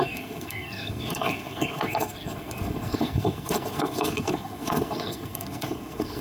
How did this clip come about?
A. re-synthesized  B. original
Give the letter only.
A